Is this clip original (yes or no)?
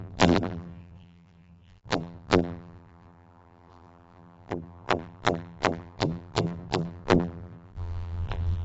no